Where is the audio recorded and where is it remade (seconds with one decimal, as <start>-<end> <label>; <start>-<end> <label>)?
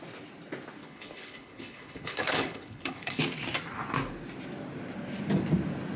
0.0-0.8 recorded; 0.8-3.2 remade; 3.2-6.0 recorded